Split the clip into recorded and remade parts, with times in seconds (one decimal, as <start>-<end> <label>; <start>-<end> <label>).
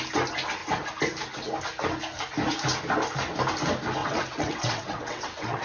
0.0-4.0 recorded; 4.0-5.6 remade